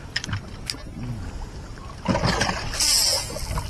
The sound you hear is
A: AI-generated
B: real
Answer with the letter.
B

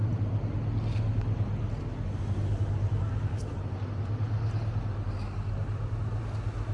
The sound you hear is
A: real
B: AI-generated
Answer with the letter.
A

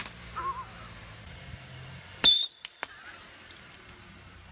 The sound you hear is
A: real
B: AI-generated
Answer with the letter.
A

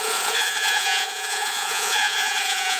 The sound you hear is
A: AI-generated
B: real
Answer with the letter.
A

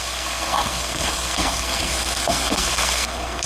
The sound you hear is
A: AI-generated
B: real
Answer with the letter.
A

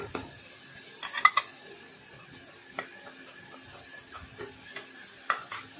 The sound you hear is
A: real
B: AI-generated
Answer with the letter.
A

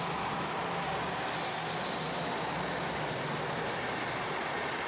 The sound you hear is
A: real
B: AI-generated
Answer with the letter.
A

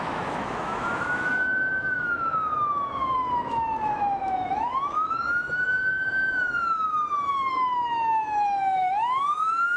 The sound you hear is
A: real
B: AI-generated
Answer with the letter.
B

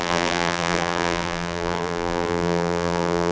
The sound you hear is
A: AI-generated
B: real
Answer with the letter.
A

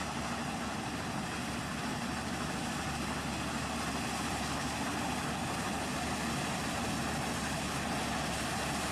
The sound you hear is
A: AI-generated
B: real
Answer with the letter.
B